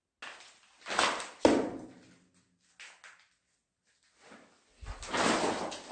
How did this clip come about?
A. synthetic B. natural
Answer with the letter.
B